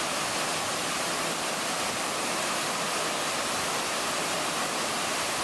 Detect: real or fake real